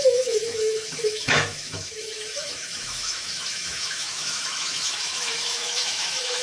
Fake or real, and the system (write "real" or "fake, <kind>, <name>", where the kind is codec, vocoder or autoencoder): fake, autoencoder, DAC-VAE